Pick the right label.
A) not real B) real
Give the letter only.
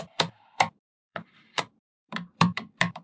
A